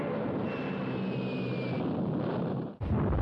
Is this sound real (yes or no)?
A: yes